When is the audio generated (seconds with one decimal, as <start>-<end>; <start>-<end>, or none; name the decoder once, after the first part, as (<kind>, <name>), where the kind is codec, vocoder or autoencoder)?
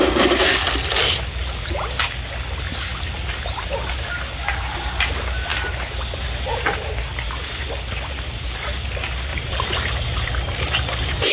9.3-11.3 (vocoder, BigVGAN v2)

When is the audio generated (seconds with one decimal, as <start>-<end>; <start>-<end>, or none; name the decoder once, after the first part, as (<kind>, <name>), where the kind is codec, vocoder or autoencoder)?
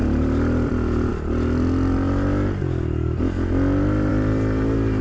0.0-0.7 (vocoder, BigVGAN v2)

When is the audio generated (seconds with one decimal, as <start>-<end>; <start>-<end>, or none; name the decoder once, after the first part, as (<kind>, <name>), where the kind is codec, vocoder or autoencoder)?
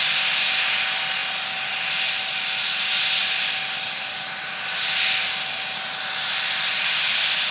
none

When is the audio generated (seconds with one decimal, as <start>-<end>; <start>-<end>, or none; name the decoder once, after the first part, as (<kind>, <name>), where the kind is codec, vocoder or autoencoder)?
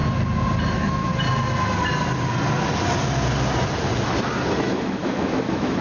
0.7-1.1 (autoencoder, DAC-VAE); 4.6-5.8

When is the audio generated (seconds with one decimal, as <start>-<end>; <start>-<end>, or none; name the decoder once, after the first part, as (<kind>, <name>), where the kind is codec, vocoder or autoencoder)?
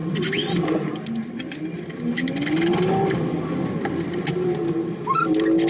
none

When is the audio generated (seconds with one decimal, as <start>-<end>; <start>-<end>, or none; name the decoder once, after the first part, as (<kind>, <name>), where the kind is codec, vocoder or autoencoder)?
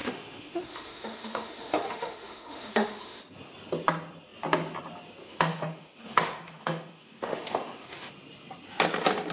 0.0-3.2 (autoencoder, DAC-VAE); 5.2-8.1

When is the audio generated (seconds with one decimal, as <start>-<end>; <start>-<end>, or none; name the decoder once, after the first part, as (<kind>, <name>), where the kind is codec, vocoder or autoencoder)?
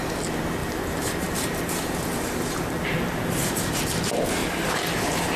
0.6-3.8 (vocoder, BigVGAN v2); 4.4-5.4